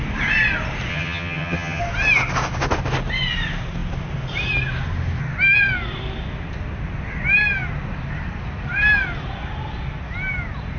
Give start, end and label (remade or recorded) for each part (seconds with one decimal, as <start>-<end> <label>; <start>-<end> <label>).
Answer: 0.0-0.9 recorded; 0.9-1.8 remade; 1.8-10.8 recorded